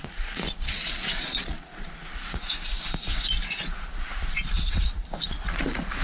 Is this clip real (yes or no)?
no